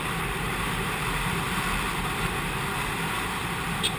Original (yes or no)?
no